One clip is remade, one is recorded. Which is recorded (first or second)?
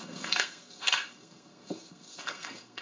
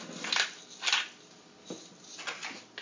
second